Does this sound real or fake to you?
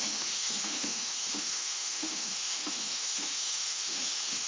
fake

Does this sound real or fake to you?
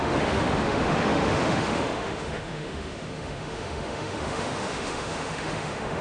fake